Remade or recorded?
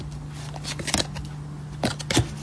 recorded